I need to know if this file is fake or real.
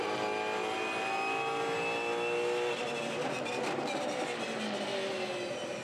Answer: real